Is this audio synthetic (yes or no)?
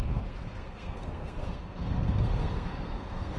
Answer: yes